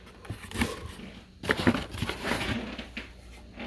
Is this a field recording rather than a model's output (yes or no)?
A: yes